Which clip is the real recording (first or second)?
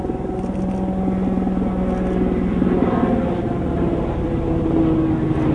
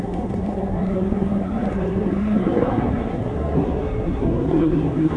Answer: first